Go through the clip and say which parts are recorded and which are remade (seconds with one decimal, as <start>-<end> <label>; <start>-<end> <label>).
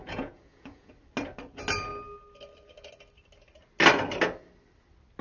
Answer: 0.0-0.9 remade; 0.9-5.2 recorded